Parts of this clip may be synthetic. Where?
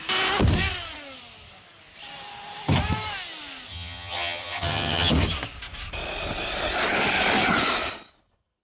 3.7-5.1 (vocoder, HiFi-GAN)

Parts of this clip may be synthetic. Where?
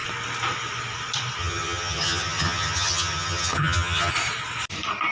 1.4-4.1 (vocoder, HiFi-GAN)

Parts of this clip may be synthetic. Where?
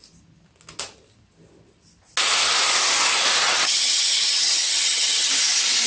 3.4-5.3 (vocoder, HiFi-GAN)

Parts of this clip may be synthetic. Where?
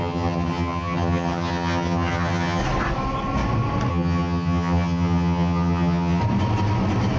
0.0-2.6 (vocoder, HiFi-GAN); 3.9-6.2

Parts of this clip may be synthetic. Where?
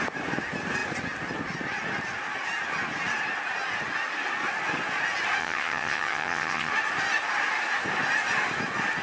5.4-6.7 (vocoder, HiFi-GAN)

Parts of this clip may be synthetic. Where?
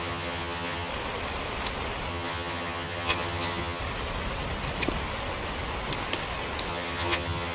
0.0-0.9 (vocoder, HiFi-GAN); 2.1-3.8; 6.7-7.5